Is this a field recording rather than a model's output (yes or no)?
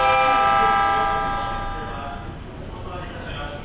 yes